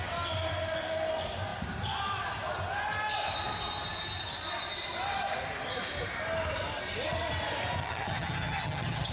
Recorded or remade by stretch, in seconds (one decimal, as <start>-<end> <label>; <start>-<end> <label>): 0.0-7.8 recorded; 7.8-9.1 remade